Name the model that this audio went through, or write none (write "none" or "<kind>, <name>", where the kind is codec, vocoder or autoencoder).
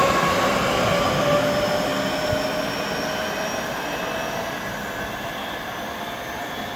none